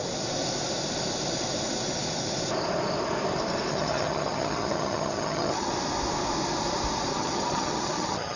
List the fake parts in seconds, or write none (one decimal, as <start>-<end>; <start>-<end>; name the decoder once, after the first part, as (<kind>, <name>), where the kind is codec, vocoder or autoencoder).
3.7-5.7 (vocoder, HiFi-GAN); 7.1-8.4